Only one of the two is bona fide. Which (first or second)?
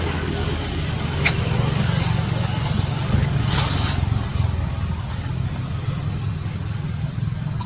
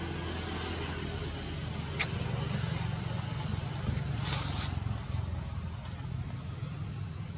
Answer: second